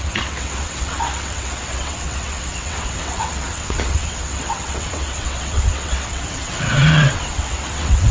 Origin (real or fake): fake